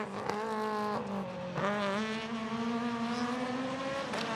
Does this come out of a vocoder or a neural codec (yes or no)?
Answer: no